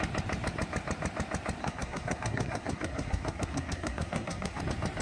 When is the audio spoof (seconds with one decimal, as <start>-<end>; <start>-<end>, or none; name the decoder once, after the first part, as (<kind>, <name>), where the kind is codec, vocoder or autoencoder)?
1.6-4.6 (codec, SNAC)